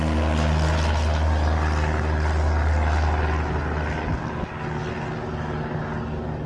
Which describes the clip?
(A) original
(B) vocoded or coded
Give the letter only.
A